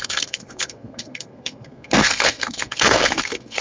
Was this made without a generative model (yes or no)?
no